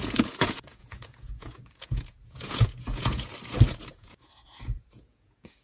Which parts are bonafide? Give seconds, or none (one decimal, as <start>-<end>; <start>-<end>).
3.3-3.9